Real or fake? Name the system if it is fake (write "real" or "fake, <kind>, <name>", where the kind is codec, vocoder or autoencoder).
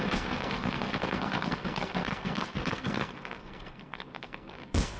fake, codec, SNAC